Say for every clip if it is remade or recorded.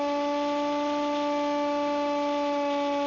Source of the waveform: recorded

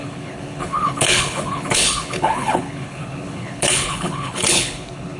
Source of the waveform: remade